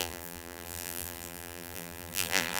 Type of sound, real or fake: fake